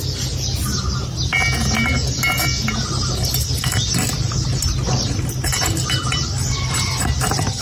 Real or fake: real